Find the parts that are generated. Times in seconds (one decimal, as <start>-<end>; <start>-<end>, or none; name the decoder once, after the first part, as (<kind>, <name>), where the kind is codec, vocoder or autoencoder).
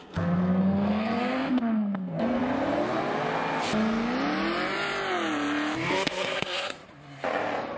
0.0-2.4 (codec, SNAC); 5.9-6.8